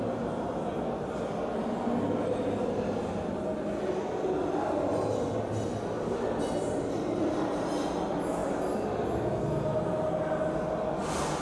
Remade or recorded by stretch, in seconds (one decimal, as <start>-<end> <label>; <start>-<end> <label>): 0.0-11.4 recorded